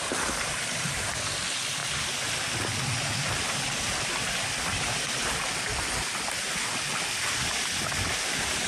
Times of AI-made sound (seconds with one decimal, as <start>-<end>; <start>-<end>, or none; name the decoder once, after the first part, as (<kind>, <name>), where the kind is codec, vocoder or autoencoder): none